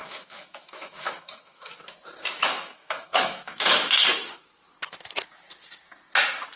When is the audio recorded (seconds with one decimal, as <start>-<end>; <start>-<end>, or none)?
1.7-2.5; 4.0-6.6

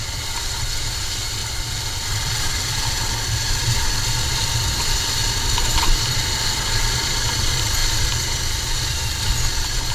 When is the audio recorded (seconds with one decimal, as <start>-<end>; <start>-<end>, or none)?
0.0-1.4; 3.9-7.8

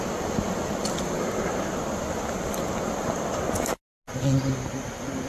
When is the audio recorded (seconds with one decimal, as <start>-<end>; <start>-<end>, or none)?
0.0-5.3